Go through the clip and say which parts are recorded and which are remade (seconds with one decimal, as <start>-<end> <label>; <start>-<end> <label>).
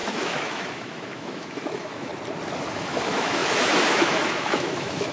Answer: 0.0-2.1 remade; 2.1-2.7 recorded; 2.7-5.1 remade